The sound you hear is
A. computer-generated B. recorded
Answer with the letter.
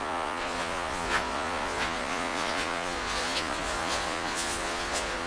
A